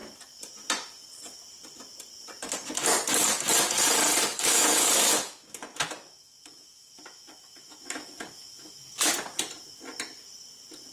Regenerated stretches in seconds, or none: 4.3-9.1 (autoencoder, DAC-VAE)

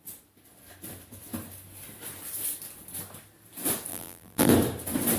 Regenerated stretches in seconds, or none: 3.9-4.5 (vocoder, BigVGAN v2)

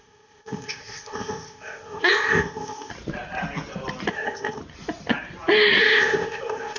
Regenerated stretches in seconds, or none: 0.0-2.9 (codec, ZipCodec); 4.1-4.6; 5.8-6.8

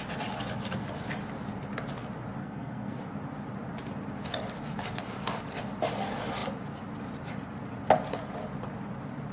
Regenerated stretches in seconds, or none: 2.4-3.0 (codec, SNAC)

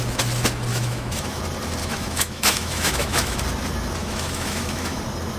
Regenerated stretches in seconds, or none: 0.7-1.4 (autoencoder, DAC-VAE); 1.8-3.4; 4.0-5.0

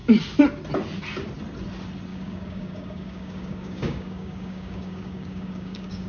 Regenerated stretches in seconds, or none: 2.1-6.1 (codec, DAC)

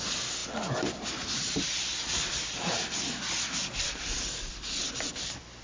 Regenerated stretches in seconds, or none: none

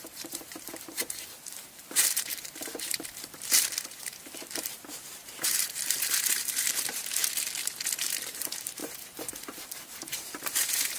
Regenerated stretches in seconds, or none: 0.0-7.2 (vocoder, BigVGAN v2); 8.3-11.0